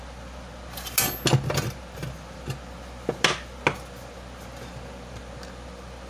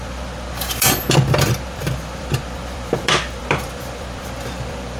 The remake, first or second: second